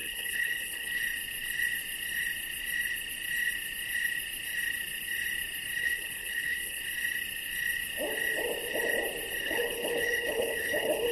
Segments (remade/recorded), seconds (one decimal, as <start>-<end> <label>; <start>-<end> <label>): 0.0-1.0 remade; 1.0-5.8 recorded; 5.8-6.8 remade; 6.8-9.4 recorded; 9.4-11.1 remade